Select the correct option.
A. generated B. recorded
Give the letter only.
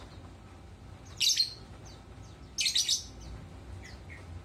B